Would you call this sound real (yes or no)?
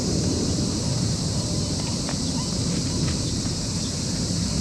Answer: no